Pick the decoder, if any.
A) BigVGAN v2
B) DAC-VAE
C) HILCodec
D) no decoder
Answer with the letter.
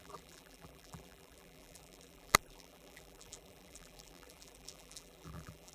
A